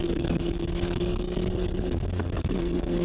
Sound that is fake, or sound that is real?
fake